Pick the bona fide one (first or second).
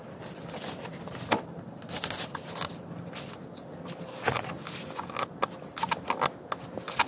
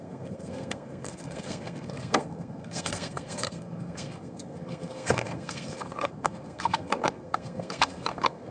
first